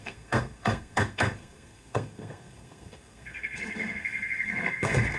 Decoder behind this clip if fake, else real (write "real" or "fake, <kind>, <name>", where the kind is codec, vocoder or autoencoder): fake, codec, SNAC